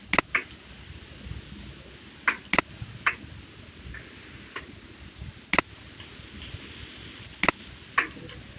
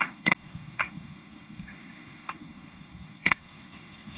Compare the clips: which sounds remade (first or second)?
second